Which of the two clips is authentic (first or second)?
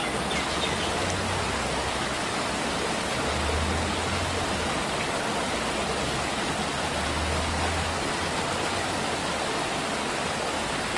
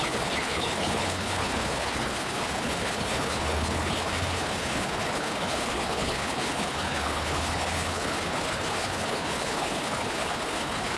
first